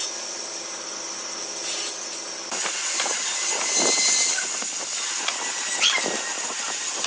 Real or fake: real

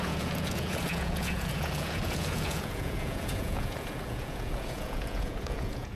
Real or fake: fake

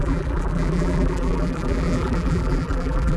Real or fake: fake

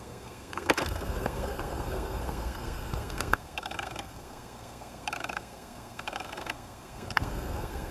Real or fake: fake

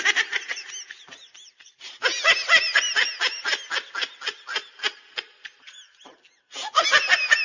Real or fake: real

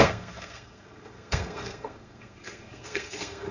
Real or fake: fake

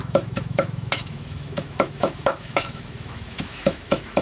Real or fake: fake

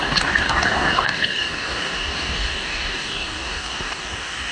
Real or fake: fake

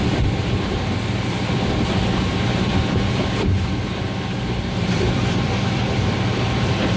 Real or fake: fake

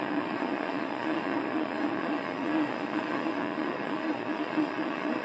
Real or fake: fake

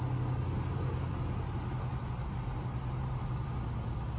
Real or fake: real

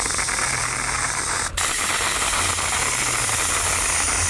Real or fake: real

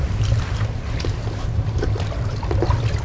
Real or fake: real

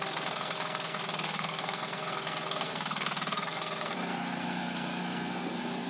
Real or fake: fake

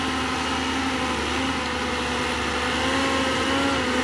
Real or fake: real